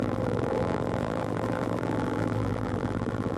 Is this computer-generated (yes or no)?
yes